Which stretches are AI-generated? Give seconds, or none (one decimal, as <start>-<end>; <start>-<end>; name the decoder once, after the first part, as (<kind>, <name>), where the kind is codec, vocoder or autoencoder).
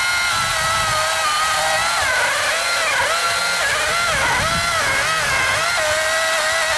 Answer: none